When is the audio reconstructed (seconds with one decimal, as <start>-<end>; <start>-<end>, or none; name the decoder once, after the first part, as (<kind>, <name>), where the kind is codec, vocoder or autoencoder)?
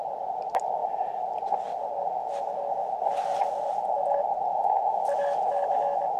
4.5-5.0 (autoencoder, DAC-VAE)